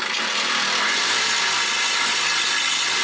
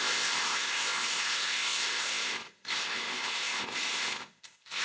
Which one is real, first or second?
first